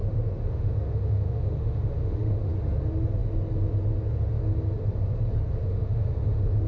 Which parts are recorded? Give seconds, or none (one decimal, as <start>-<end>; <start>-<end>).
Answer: 2.5-5.6